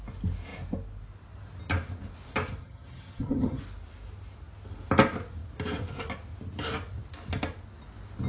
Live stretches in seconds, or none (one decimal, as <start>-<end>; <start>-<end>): 0.0-2.6; 3.6-8.3